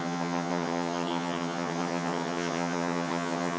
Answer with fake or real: fake